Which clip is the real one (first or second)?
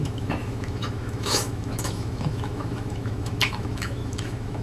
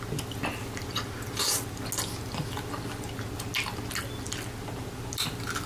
second